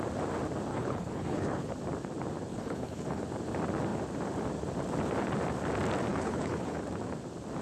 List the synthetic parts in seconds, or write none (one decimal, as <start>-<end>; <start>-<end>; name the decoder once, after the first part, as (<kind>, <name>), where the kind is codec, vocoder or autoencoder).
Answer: 0.7-1.7 (codec, HILCodec); 2.5-3.2; 6.1-6.8